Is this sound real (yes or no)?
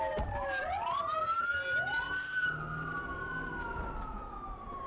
yes